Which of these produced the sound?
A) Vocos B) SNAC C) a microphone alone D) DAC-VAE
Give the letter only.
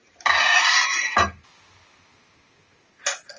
C